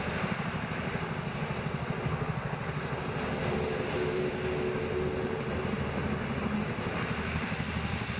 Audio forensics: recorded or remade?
recorded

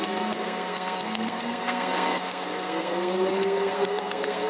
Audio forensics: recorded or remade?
remade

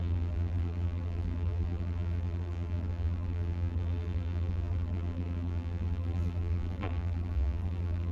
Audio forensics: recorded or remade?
remade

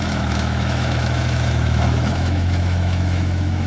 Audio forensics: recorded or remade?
remade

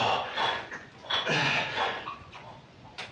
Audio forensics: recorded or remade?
remade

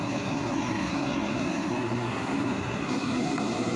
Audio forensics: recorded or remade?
remade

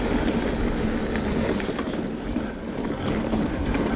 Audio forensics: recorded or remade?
recorded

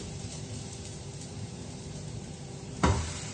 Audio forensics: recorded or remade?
remade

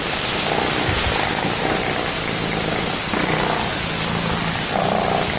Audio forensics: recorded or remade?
recorded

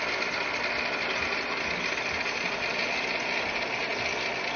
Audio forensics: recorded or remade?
recorded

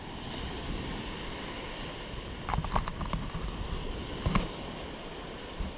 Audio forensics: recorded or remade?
recorded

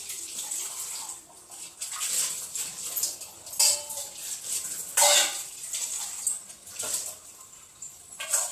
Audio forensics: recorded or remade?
recorded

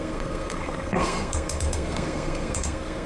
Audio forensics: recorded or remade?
remade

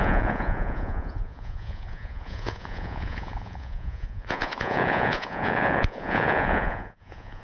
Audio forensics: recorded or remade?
remade